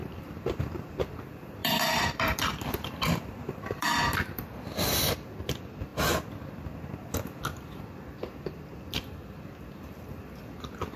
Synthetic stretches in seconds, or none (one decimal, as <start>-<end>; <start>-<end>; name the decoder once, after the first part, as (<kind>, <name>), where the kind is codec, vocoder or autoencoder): 0.0-1.0 (vocoder, BigVGAN v2); 1.6-4.0